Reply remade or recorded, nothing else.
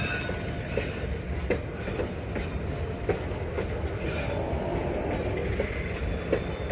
recorded